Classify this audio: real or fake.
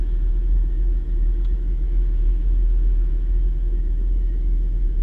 fake